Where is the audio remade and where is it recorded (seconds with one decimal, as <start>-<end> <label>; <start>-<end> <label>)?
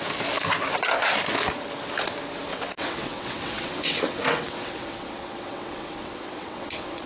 0.0-2.5 recorded; 2.5-7.1 remade